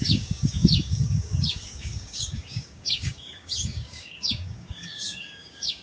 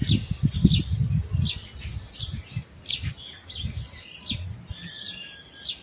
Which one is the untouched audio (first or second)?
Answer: second